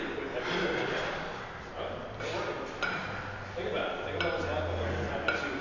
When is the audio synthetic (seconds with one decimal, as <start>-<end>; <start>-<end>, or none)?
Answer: none